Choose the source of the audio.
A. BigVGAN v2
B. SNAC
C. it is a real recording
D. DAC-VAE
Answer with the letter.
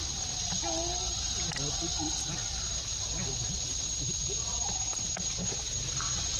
C